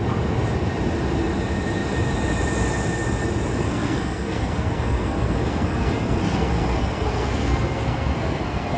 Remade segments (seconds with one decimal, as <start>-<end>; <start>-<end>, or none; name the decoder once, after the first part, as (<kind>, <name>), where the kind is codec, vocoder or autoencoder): 3.6-8.8 (codec, SNAC)